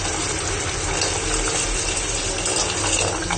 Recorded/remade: recorded